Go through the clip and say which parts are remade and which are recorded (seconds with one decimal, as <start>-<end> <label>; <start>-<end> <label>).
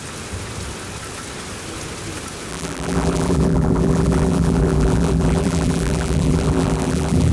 0.0-2.5 recorded; 2.5-7.3 remade